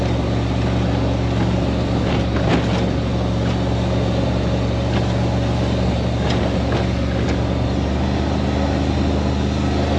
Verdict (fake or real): real